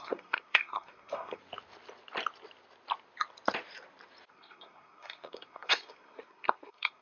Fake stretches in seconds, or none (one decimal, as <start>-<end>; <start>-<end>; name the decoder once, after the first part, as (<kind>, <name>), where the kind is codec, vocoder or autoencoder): 0.0-1.4 (codec, SNAC); 4.3-7.0